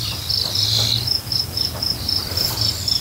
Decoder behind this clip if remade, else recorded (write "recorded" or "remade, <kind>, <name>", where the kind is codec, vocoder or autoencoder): recorded